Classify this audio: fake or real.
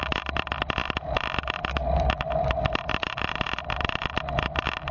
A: real